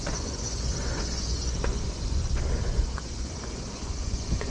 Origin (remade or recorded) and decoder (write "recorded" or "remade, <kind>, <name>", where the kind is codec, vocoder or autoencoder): remade, vocoder, Vocos